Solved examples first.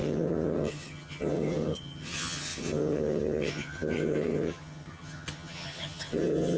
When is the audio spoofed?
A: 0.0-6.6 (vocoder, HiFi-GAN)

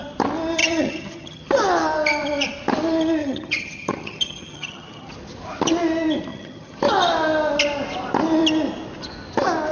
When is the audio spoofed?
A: 0.6-1.5 (vocoder, HiFi-GAN); 3.2-5.1; 6.3-6.8

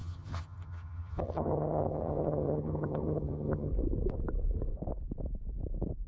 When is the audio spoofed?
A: 0.0-3.7 (vocoder, HiFi-GAN)

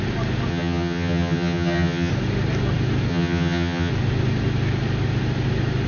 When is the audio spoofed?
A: 0.5-2.1 (vocoder, HiFi-GAN); 3.1-3.9